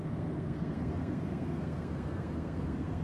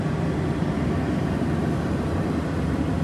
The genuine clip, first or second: second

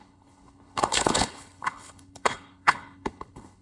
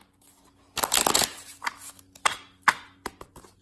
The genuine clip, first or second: second